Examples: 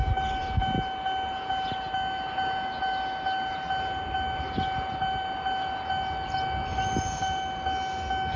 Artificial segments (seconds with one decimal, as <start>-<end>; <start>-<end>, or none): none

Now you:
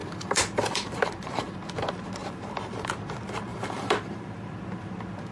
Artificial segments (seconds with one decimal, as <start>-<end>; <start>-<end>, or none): 0.0-1.5; 2.2-2.9; 3.5-4.4

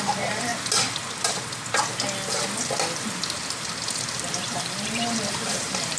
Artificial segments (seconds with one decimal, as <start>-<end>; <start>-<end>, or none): 0.0-0.5; 4.1-6.0

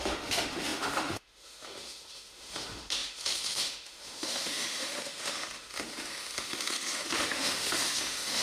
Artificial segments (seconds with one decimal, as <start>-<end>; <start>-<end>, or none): 0.0-8.4

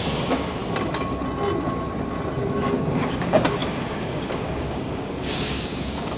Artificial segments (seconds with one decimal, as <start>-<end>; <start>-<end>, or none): 0.0-0.6; 2.6-6.2